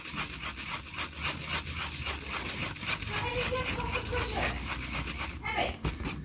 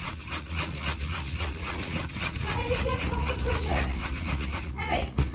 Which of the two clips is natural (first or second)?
first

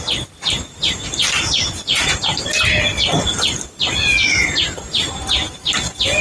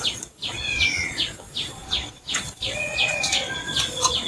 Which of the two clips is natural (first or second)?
first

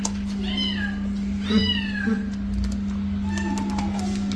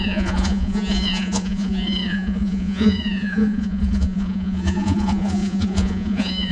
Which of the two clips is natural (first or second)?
first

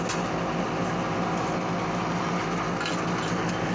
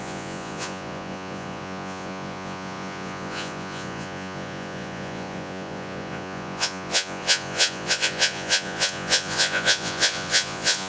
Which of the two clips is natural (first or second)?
first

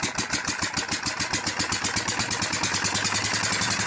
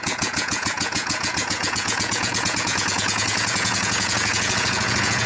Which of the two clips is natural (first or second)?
first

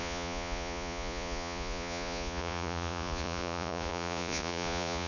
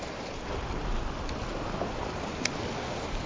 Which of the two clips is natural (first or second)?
second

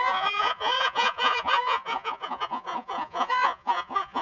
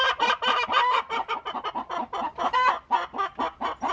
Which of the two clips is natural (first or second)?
second